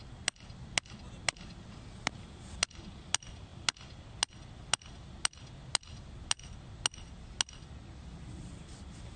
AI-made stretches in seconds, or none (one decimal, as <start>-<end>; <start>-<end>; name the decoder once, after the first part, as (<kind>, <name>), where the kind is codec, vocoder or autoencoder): none